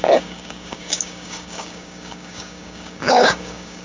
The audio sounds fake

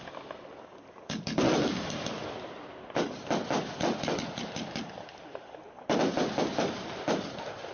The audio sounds real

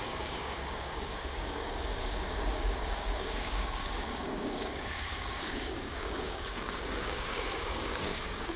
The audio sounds fake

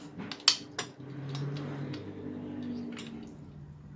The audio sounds real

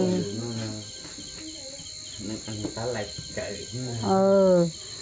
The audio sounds real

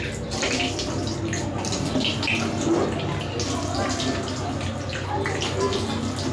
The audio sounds real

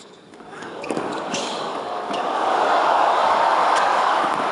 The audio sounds fake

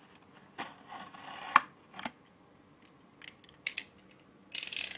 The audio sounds real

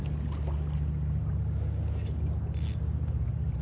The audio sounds real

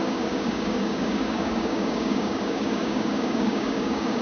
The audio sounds fake